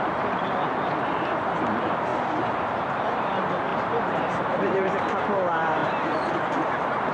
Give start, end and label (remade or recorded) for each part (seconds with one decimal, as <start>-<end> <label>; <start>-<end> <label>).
0.0-2.1 remade; 2.1-2.7 recorded; 2.7-5.8 remade; 5.8-6.3 recorded; 6.3-7.1 remade